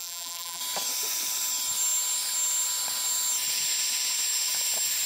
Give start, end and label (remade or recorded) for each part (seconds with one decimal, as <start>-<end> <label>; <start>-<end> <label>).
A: 0.0-0.6 remade; 0.6-5.1 recorded